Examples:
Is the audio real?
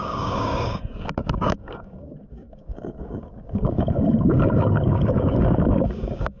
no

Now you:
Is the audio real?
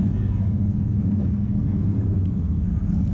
no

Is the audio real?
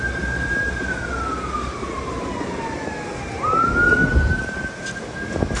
yes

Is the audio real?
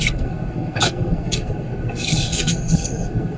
no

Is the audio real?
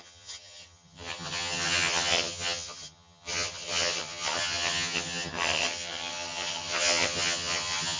no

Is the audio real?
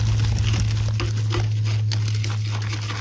yes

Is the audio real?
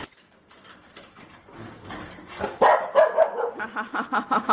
yes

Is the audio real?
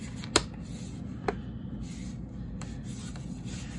yes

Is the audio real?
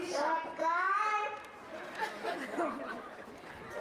yes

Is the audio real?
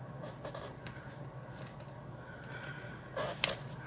yes